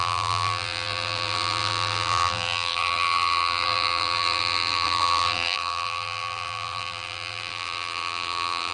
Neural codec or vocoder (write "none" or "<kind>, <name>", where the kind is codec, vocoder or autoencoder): vocoder, BigVGAN v2